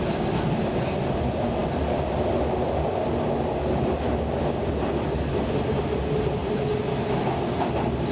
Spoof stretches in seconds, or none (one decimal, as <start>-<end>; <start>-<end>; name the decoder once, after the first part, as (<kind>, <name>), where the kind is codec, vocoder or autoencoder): none